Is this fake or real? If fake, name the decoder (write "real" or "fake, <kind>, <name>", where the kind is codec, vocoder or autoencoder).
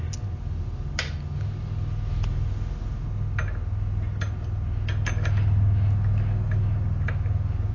real